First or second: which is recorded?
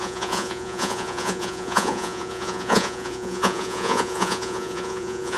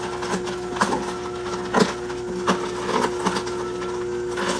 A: second